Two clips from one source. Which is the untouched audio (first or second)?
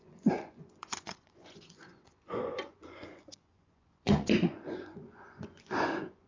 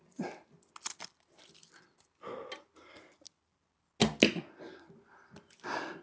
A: second